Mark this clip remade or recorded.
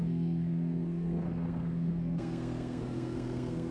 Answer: remade